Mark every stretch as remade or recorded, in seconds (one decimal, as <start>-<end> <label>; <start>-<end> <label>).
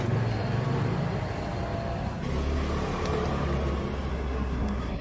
0.0-4.1 recorded; 4.1-5.0 remade